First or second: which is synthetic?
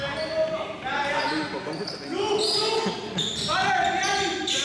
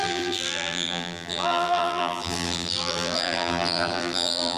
second